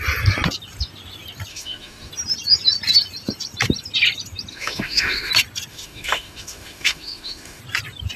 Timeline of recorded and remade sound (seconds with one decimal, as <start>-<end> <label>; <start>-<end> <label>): 0.0-1.5 recorded; 1.5-2.1 remade; 2.1-4.5 recorded; 4.5-5.3 remade; 5.3-5.7 recorded; 5.7-7.6 remade; 7.6-8.2 recorded